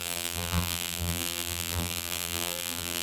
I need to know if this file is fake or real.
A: fake